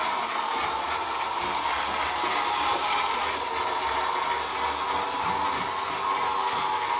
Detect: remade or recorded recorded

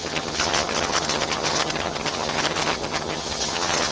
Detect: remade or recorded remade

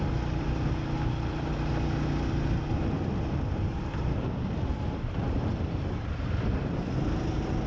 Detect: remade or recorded recorded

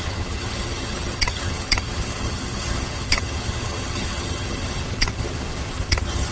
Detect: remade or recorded remade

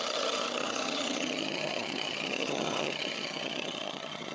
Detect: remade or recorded remade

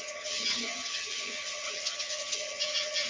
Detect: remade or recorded remade